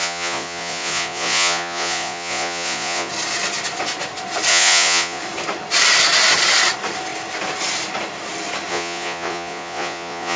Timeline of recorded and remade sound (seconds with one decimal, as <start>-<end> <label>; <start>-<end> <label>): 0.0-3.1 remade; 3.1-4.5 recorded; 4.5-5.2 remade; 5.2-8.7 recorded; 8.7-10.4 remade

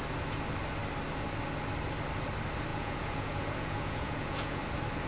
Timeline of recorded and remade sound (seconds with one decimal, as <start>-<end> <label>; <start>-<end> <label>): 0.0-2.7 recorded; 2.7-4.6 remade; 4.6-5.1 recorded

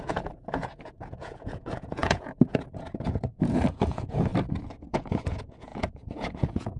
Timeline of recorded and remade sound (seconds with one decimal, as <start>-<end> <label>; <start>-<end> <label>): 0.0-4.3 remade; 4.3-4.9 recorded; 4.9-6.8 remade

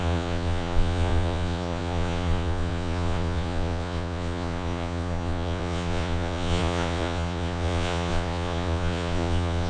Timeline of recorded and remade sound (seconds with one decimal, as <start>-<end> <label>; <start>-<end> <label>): 0.0-9.7 remade